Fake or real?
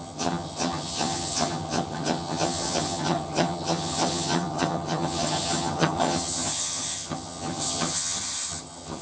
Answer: fake